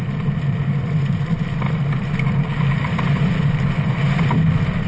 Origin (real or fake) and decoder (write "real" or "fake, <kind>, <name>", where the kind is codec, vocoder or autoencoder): real